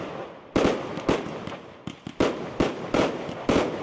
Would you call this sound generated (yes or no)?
no